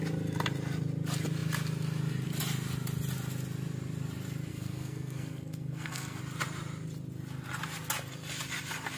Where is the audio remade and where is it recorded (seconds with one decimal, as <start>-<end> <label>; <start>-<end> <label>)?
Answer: 0.0-4.5 recorded; 4.5-6.2 remade; 6.2-9.0 recorded

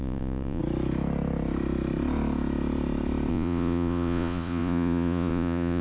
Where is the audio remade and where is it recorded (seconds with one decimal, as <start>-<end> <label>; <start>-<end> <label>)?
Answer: 0.0-0.6 remade; 0.6-3.3 recorded; 3.3-5.8 remade